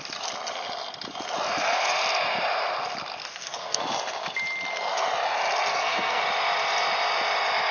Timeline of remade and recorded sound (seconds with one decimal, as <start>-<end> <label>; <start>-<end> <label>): 0.0-3.2 recorded; 3.2-3.8 remade; 3.8-5.7 recorded; 5.7-6.2 remade; 6.2-7.7 recorded